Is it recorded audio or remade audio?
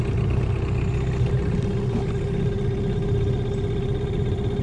recorded